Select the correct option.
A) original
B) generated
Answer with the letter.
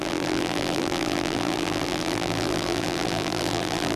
B